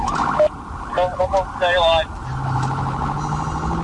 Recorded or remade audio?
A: recorded